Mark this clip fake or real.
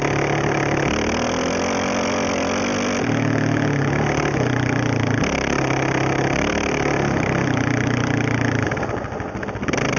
real